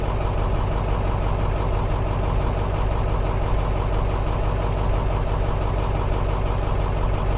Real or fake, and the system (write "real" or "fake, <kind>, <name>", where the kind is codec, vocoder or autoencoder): real